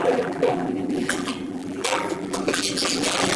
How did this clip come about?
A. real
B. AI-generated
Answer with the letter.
B